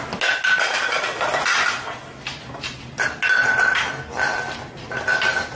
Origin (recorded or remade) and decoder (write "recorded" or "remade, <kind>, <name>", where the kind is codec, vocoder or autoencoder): recorded